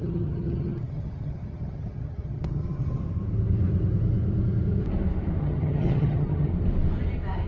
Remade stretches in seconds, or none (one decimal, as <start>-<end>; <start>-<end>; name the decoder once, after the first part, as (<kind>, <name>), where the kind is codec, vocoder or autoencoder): 0.0-3.0 (vocoder, HiFi-GAN); 5.4-6.5